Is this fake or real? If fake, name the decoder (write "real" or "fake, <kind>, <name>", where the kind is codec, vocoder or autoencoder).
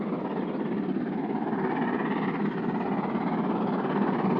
real